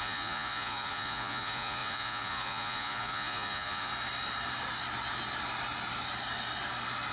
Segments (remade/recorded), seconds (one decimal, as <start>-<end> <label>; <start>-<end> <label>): 0.0-3.9 remade; 3.9-7.1 recorded